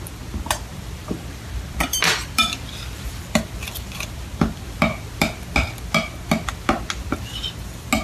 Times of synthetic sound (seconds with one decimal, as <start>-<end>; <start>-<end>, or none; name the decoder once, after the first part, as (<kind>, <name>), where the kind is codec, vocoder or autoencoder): 0.7-5.5 (vocoder, BigVGAN v2)